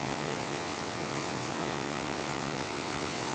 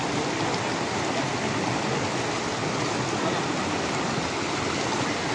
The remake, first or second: first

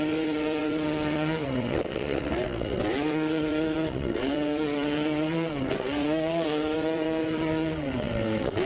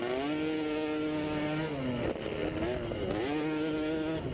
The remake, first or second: first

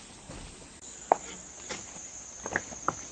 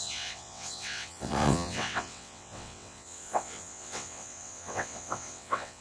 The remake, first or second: second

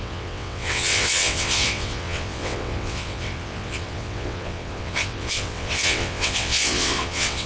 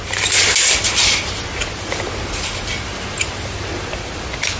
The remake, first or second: first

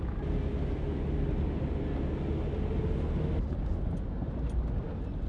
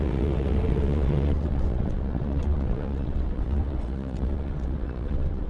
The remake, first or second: second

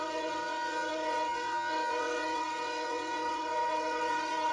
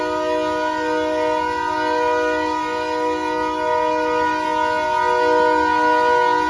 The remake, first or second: first